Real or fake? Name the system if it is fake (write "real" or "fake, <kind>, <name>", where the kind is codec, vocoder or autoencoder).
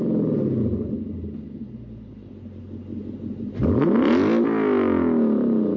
real